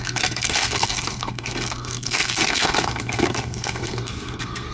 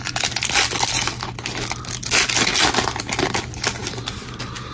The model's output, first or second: first